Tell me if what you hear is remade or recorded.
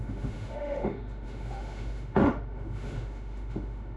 remade